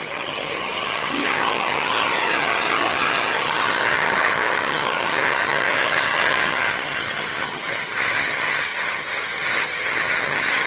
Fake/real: fake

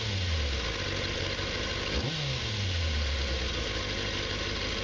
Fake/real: real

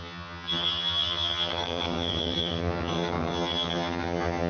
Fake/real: fake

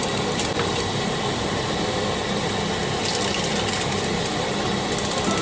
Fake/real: real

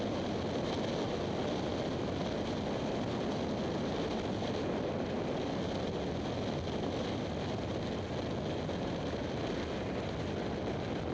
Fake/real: real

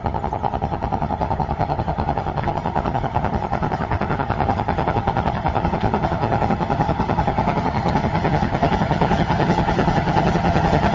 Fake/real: fake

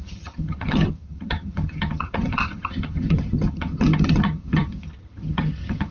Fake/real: fake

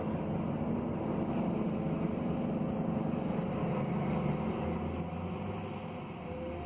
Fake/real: real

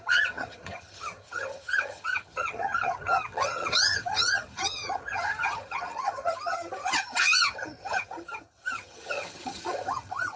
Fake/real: fake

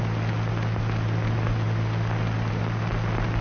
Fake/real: real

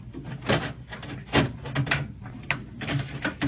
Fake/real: real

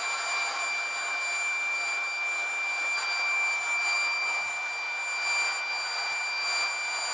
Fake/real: real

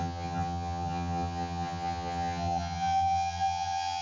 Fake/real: fake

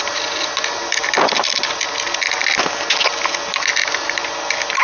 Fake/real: real